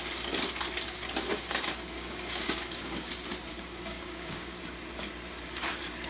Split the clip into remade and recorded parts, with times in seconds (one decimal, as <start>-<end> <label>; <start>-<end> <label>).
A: 0.0-1.3 recorded; 1.3-3.1 remade; 3.1-3.5 recorded; 3.5-4.6 remade; 4.6-6.1 recorded